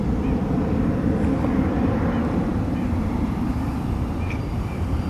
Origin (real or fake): fake